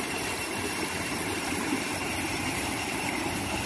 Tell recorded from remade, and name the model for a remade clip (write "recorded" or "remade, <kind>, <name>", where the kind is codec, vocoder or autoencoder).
remade, vocoder, BigVGAN v2